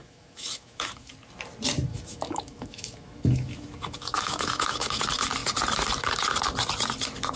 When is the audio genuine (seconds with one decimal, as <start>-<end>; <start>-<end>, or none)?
1.1-1.9; 5.0-7.4